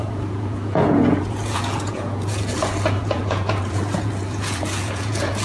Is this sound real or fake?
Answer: fake